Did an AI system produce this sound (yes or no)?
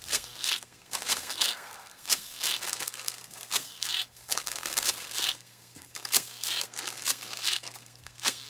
yes